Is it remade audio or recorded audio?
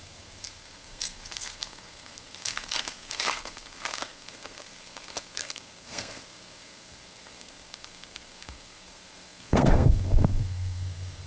remade